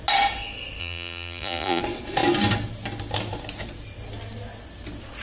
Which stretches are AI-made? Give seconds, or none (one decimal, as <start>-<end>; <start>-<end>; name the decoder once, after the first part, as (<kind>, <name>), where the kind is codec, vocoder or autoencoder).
0.8-1.8 (vocoder, BigVGAN v2)